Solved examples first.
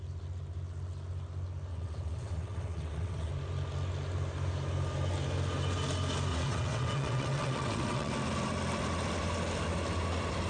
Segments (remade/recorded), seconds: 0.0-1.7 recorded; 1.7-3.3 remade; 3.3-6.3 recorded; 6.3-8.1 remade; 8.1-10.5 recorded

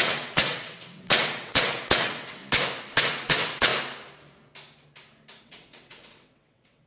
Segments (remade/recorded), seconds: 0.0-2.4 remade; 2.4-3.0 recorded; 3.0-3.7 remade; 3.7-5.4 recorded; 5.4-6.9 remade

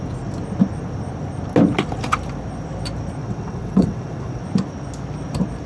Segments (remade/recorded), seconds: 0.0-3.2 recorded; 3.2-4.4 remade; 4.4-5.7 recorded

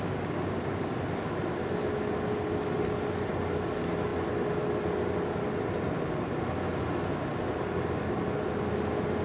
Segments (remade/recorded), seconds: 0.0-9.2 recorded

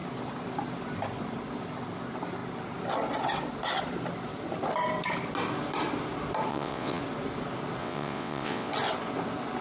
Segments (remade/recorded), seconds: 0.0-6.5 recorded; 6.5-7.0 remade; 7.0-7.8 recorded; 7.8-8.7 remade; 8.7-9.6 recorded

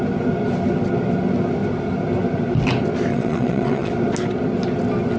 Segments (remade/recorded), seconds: 0.0-3.1 recorded; 3.1-3.9 remade; 3.9-5.2 recorded

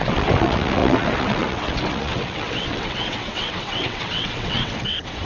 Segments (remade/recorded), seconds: 0.0-5.3 remade

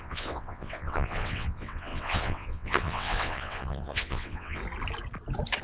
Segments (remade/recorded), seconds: 0.0-4.6 remade; 4.6-5.6 recorded